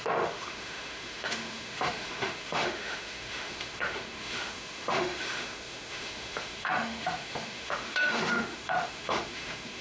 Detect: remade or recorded remade